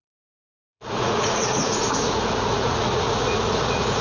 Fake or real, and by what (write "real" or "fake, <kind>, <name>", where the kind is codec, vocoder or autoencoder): fake, vocoder, Vocos